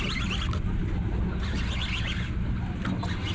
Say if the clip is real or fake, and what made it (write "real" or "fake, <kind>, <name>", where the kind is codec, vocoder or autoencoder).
real